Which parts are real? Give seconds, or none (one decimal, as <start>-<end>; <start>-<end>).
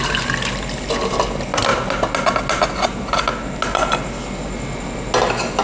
0.0-5.6